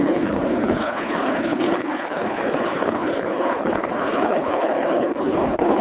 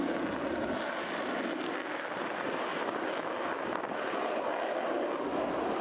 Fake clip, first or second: first